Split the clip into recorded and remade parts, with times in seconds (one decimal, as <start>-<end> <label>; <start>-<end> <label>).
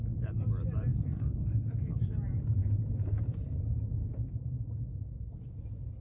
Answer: 0.0-0.9 recorded; 0.9-2.0 remade; 2.0-6.0 recorded